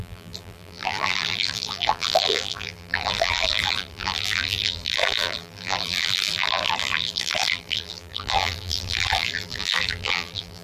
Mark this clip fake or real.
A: fake